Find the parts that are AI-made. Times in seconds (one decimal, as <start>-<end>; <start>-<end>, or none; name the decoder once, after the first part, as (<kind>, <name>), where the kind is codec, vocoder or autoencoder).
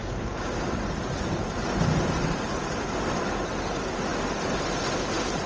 0.0-3.3 (vocoder, BigVGAN v2)